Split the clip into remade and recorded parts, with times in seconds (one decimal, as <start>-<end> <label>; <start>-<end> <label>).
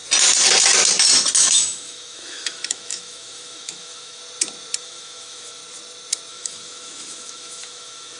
0.0-1.4 recorded; 1.4-4.2 remade; 4.2-4.8 recorded; 4.8-5.6 remade; 5.6-6.3 recorded; 6.3-8.2 remade